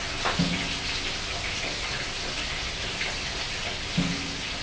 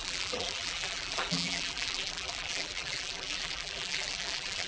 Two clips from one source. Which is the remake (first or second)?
second